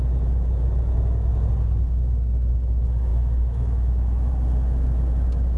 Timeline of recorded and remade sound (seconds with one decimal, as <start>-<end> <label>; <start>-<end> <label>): 0.0-3.1 recorded; 3.1-4.3 remade; 4.3-5.6 recorded